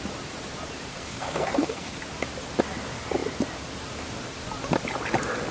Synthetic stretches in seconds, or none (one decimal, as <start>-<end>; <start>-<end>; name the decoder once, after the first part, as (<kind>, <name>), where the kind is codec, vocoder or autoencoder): 0.9-2.0 (codec, SNAC)